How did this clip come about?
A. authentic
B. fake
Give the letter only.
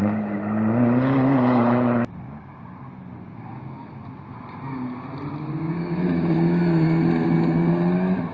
A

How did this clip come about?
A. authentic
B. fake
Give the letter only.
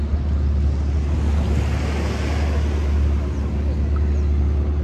A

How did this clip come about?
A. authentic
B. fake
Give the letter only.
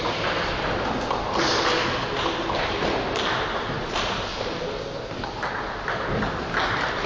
A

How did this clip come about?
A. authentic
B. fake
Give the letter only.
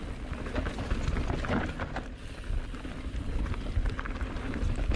A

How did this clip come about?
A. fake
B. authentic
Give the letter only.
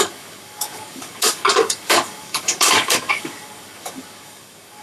A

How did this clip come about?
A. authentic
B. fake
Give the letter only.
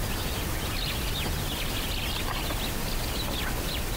A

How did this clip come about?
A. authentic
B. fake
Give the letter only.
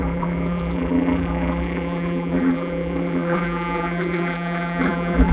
B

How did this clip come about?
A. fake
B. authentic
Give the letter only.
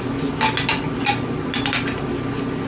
B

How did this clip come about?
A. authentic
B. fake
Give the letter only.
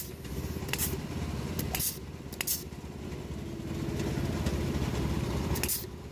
A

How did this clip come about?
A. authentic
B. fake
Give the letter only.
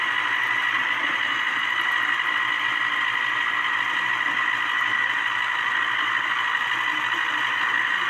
A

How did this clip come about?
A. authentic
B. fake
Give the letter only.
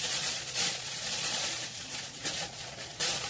B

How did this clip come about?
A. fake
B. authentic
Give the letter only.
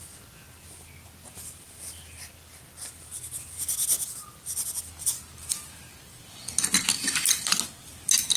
B